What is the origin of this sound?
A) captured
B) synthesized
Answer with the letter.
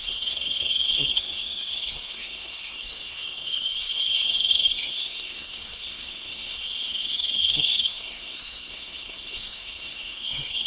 B